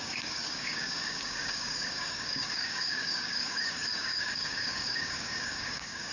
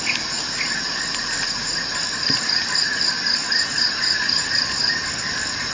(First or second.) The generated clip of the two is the first